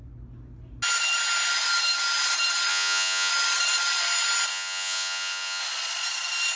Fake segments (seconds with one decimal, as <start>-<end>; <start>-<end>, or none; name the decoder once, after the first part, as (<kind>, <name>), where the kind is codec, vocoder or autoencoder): 2.7-3.3 (vocoder, Vocos); 4.5-5.6